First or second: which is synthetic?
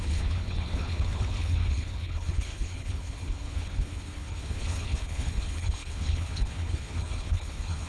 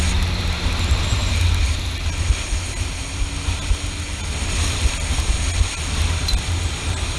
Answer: first